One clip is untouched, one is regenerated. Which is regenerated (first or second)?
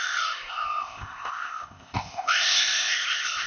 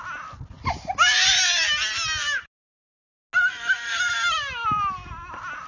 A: first